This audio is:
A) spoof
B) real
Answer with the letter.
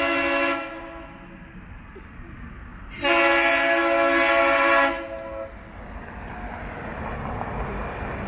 B